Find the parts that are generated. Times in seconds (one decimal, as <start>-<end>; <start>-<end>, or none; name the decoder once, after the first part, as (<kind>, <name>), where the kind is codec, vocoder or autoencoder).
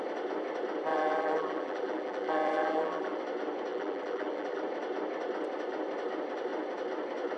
0.9-3.2 (vocoder, BigVGAN v2); 3.7-4.6